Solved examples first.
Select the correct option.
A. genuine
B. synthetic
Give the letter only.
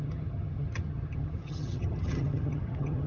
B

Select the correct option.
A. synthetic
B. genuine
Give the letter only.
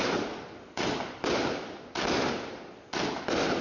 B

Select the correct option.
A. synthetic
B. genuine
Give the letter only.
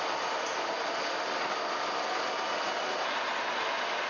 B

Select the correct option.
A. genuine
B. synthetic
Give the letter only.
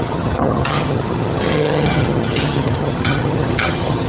B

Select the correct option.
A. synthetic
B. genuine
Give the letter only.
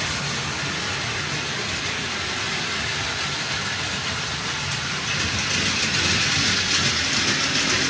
B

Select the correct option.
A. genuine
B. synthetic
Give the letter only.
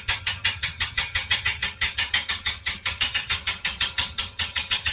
B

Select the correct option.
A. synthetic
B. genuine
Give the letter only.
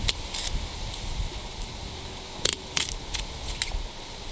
B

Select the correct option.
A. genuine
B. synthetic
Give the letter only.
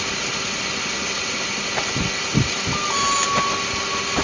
A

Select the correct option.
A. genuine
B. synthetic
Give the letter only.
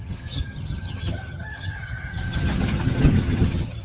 B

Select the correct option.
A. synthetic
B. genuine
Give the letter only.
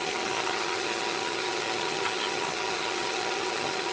A